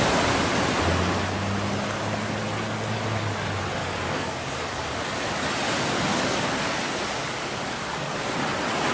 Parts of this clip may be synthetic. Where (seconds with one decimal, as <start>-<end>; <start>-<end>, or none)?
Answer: 3.8-5.0; 6.1-6.7; 7.2-8.1